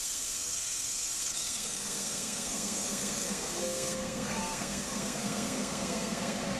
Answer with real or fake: fake